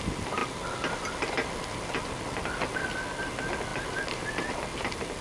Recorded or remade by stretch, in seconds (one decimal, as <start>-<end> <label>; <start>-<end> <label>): 0.0-3.7 recorded; 3.7-4.5 remade; 4.5-5.2 recorded